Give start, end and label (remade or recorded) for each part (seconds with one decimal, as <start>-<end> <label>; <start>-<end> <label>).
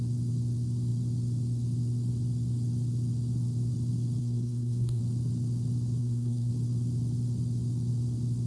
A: 0.0-4.2 recorded; 4.2-5.0 remade; 5.0-6.0 recorded; 6.0-6.5 remade; 6.5-8.5 recorded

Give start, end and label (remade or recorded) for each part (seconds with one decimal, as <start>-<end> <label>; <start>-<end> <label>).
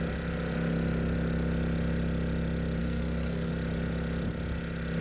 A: 0.0-2.8 recorded; 2.8-3.5 remade; 3.5-5.0 recorded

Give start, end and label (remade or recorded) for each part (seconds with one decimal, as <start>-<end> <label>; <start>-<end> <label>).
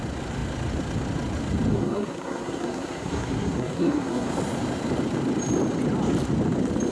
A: 0.0-1.7 recorded; 1.7-4.3 remade; 4.3-6.9 recorded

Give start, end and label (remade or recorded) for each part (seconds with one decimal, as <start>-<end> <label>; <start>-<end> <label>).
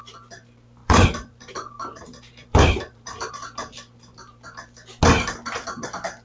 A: 0.0-0.8 recorded; 0.8-3.3 remade; 3.3-6.2 recorded